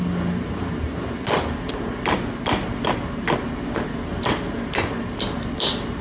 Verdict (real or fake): real